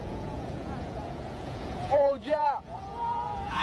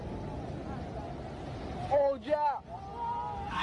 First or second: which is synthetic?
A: first